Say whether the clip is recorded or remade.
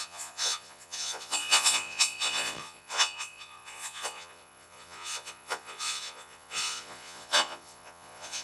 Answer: remade